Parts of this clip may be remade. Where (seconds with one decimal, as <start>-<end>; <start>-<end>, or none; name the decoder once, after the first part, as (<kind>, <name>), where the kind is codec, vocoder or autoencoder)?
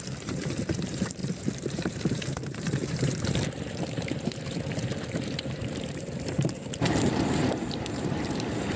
0.0-8.8 (vocoder, BigVGAN v2)